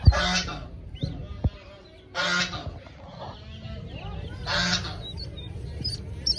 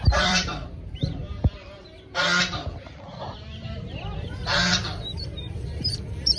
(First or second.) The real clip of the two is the first